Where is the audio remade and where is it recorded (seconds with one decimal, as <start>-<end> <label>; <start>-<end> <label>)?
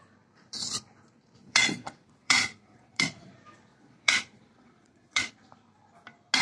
0.0-1.4 recorded; 1.4-3.3 remade; 3.3-3.7 recorded; 3.7-5.3 remade; 5.3-6.4 recorded